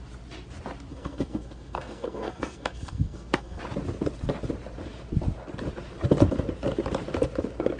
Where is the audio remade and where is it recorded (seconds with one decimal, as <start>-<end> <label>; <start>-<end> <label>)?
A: 0.0-0.9 recorded; 0.9-3.6 remade; 3.6-7.8 recorded